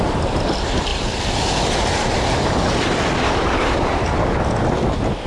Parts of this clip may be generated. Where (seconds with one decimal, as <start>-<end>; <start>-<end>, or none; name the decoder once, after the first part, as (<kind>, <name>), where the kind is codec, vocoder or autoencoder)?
none